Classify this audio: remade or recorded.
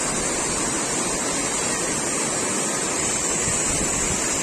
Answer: recorded